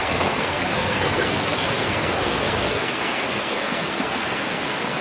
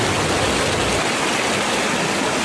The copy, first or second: first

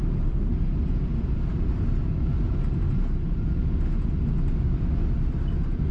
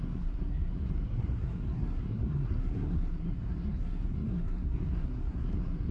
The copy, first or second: second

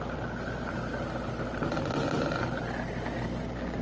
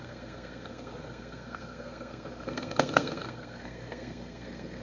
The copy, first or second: second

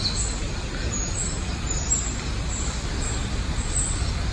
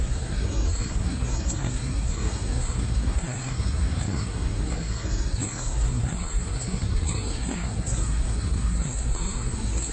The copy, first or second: second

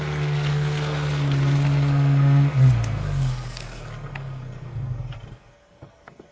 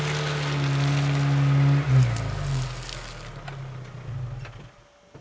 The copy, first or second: first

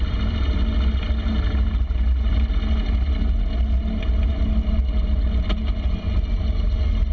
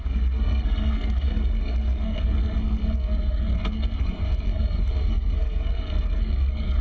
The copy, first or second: second